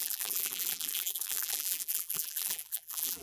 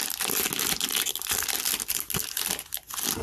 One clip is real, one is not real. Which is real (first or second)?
second